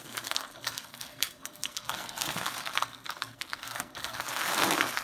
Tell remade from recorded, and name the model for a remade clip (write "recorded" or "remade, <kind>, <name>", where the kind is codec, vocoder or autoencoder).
remade, codec, SNAC